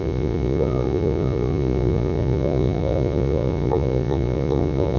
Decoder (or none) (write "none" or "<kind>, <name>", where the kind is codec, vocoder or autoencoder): vocoder, Vocos